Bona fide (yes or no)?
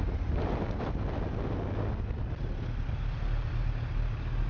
yes